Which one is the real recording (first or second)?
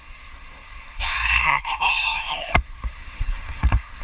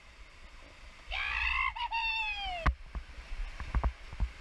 second